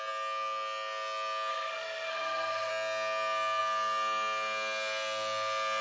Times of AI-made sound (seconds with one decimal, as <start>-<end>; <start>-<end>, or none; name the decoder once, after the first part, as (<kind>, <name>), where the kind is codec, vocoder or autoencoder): 1.5-2.7 (codec, SNAC)